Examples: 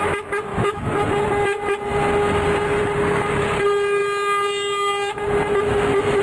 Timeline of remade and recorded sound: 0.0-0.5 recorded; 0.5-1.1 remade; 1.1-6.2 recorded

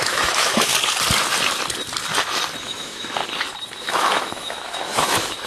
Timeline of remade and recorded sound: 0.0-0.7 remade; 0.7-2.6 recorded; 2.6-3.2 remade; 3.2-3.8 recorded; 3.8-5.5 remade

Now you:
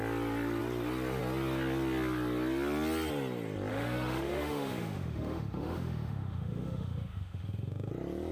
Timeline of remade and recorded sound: 0.0-3.7 recorded; 3.7-7.9 remade; 7.9-8.3 recorded

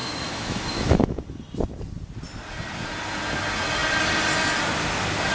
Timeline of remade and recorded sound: 0.0-1.2 remade; 1.2-5.3 recorded

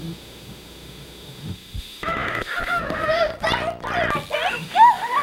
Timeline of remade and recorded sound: 0.0-3.3 remade; 3.3-4.5 recorded; 4.5-5.2 remade

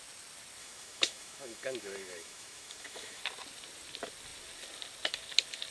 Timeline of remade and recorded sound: 0.0-0.6 recorded; 0.6-3.2 remade; 3.2-5.7 recorded

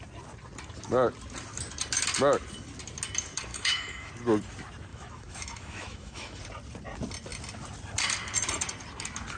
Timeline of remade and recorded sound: 0.0-3.5 recorded; 3.5-4.1 remade; 4.1-4.9 recorded; 4.9-6.4 remade; 6.4-9.4 recorded